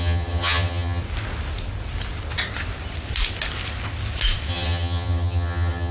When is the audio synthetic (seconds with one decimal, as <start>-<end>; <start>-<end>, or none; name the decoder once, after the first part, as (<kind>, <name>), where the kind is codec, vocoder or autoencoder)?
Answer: 0.0-1.0 (vocoder, HiFi-GAN); 4.5-5.9